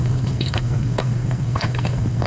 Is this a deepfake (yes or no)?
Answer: yes